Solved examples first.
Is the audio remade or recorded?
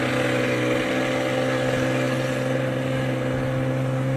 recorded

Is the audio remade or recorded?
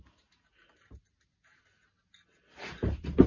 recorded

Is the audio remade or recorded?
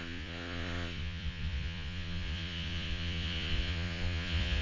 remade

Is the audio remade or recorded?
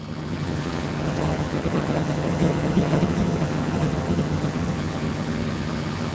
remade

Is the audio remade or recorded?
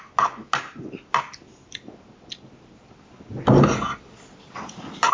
recorded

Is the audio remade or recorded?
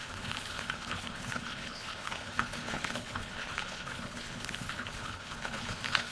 remade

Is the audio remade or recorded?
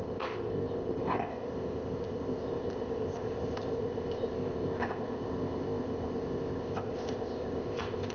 remade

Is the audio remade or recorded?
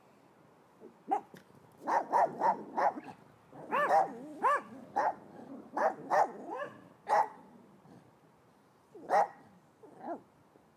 recorded